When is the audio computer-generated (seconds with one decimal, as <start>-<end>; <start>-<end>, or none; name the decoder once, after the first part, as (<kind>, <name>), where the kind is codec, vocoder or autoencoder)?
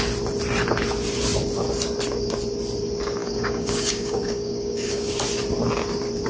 3.2-5.1 (codec, DAC)